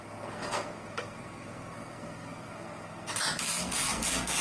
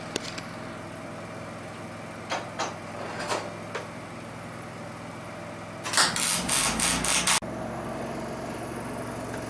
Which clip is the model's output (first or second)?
first